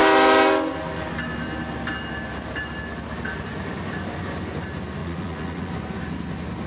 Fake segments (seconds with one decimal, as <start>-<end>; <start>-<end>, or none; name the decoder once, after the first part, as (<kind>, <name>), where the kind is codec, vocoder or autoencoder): 5.0-5.7 (vocoder, Vocos)